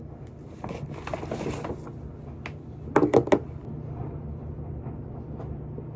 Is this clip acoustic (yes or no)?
yes